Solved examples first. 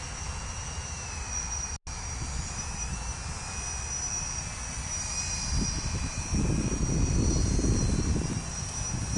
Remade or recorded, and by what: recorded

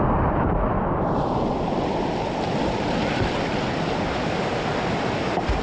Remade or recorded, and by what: recorded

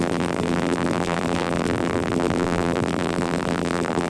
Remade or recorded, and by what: remade, vocoder, BigVGAN v2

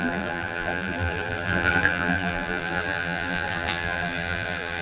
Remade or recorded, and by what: remade, vocoder, BigVGAN v2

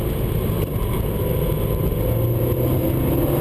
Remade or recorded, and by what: recorded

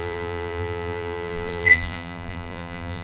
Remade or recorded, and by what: remade, vocoder, BigVGAN v2